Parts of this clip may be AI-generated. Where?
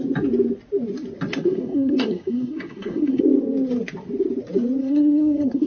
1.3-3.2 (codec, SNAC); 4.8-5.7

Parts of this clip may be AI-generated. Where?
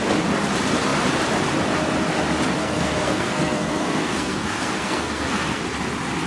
2.6-5.6 (codec, SNAC)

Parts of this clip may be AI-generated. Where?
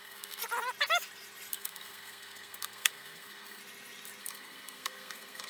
0.0-0.4 (codec, SNAC); 1.5-3.6; 4.2-5.5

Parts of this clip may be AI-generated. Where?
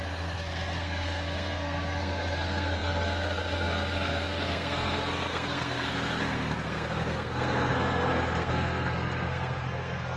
0.0-10.2 (codec, SNAC)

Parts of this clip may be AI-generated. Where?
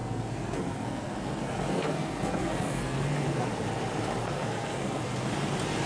0.0-3.5 (codec, SNAC); 4.2-5.3